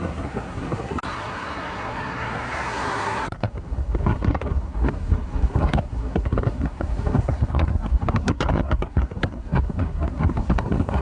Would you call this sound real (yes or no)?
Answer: no